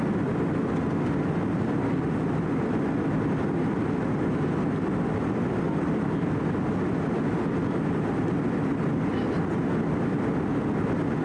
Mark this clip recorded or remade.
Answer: recorded